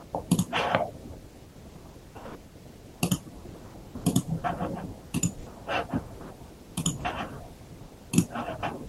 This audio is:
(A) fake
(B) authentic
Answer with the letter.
B